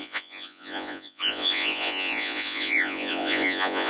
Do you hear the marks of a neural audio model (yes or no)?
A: yes